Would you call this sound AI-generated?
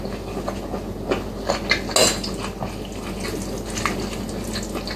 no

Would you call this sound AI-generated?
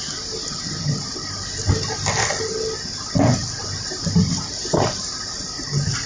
no